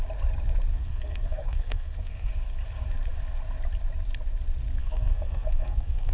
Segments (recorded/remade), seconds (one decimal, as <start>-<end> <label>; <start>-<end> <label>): 0.0-0.7 recorded; 0.7-2.3 remade; 2.3-4.8 recorded; 4.8-6.1 remade